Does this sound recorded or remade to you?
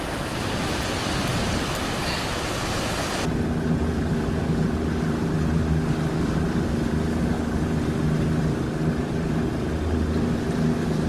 recorded